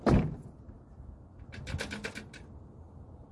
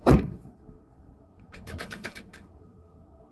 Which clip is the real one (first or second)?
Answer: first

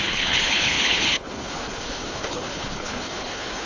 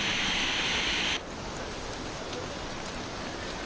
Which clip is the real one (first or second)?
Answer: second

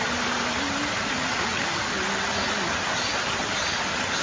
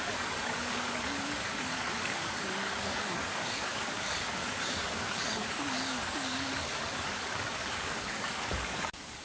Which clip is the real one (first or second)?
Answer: first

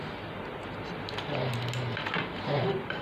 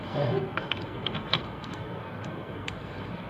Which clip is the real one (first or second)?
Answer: first